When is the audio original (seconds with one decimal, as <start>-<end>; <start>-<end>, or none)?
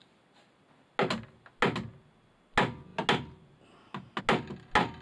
0.0-5.0